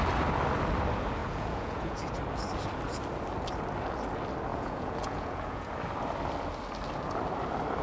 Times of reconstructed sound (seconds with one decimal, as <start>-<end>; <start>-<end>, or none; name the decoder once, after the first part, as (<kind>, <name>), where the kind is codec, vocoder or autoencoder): 1.2-2.2 (vocoder, Vocos); 4.5-5.7